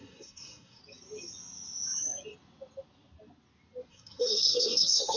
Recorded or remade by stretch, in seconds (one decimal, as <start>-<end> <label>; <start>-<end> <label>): 0.0-0.8 remade; 0.8-3.9 recorded; 3.9-5.2 remade